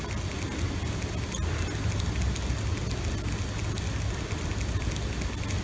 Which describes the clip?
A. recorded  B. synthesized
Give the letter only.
A